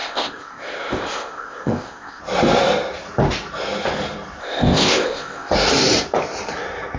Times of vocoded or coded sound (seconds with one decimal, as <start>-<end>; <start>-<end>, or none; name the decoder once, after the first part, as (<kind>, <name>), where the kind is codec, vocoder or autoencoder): 0.0-2.2 (codec, ZipCodec); 4.4-5.5